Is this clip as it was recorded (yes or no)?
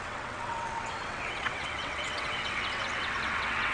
no